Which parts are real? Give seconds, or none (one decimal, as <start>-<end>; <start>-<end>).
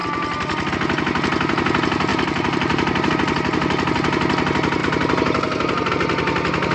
0.0-2.1; 3.1-6.7